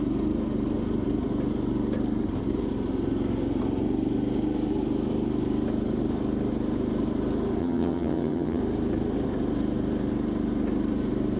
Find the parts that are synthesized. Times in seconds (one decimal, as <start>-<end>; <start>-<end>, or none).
7.6-8.6